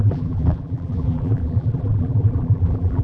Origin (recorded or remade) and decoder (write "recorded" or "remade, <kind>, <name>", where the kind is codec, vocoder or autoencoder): remade, vocoder, BigVGAN v2